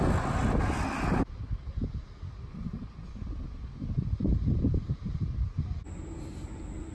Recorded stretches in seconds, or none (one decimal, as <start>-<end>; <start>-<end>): 0.0-6.9